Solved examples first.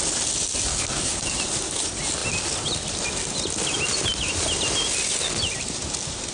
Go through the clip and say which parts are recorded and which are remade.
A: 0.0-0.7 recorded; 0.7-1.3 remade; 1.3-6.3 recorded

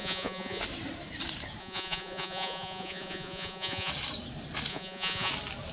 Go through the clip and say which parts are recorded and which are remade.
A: 0.0-0.6 remade; 0.6-1.6 recorded; 1.6-3.9 remade; 3.9-4.7 recorded; 4.7-5.3 remade; 5.3-5.7 recorded

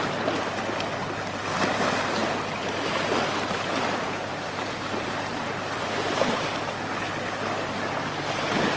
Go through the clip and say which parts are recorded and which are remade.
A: 0.0-8.8 recorded

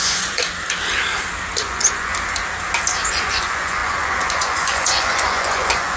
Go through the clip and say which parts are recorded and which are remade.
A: 0.0-0.4 remade; 0.4-1.6 recorded; 1.6-2.1 remade; 2.1-3.1 recorded; 3.1-6.0 remade

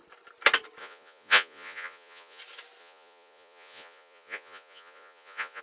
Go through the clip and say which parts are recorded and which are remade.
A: 0.0-0.8 recorded; 0.8-2.4 remade; 2.4-2.8 recorded; 2.8-5.6 remade